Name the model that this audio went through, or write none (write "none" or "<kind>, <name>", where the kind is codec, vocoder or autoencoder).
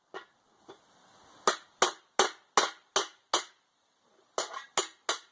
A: none